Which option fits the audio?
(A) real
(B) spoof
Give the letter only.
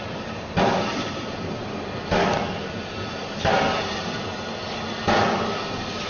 A